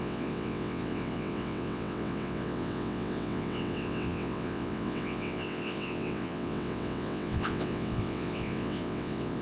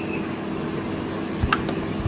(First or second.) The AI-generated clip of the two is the first